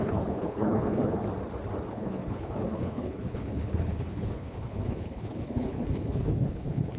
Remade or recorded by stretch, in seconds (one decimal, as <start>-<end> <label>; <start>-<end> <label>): 0.0-1.2 remade; 1.2-1.9 recorded; 1.9-7.0 remade